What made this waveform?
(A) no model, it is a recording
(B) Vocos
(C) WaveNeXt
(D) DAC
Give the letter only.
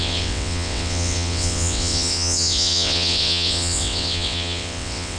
C